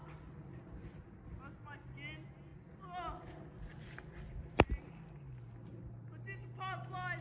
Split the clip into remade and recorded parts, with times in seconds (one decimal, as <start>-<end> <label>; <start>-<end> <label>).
0.0-7.2 recorded